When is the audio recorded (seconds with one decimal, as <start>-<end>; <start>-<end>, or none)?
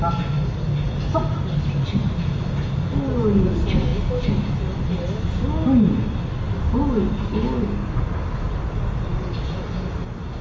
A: 0.0-10.4